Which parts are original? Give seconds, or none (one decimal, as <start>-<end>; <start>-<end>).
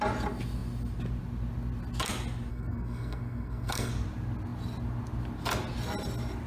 0.0-2.5; 3.9-6.5